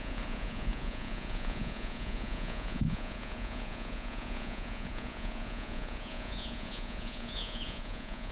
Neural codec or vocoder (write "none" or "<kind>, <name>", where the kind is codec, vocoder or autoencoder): vocoder, Vocos